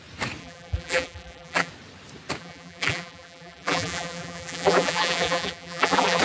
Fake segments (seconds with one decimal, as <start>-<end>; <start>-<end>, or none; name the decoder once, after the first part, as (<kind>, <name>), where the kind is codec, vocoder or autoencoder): 0.4-1.7 (vocoder, BigVGAN v2); 2.4-6.2